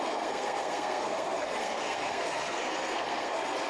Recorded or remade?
remade